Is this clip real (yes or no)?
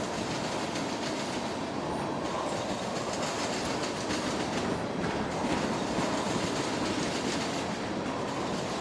yes